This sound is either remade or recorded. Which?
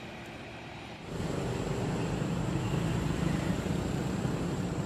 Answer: remade